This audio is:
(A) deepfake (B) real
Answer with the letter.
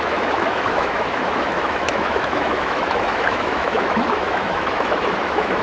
A